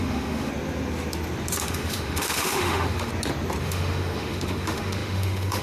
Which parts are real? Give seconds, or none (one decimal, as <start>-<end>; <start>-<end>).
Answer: 0.5-1.6; 3.1-3.6